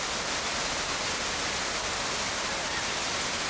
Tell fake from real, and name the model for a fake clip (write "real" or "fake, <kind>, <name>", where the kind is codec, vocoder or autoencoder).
real